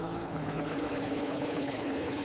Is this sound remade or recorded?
remade